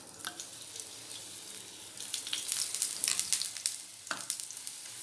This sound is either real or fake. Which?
real